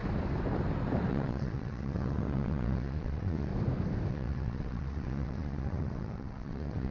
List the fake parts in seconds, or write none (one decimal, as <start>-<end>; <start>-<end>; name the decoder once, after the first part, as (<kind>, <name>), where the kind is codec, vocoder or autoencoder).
1.1-3.5 (vocoder, WaveNeXt); 4.1-6.9